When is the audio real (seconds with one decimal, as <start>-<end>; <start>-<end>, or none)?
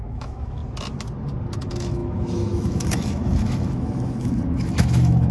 0.6-1.5